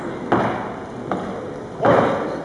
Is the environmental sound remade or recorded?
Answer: recorded